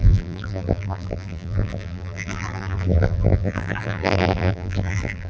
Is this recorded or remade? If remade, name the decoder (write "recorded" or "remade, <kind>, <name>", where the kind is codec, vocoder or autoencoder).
remade, vocoder, BigVGAN v2